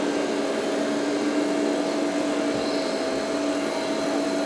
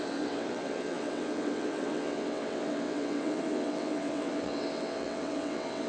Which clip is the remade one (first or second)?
second